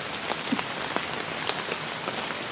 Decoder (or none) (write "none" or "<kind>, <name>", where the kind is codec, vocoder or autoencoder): none